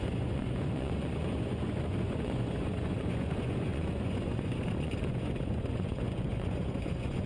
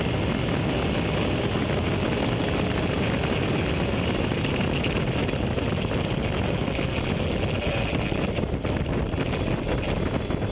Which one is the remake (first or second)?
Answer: first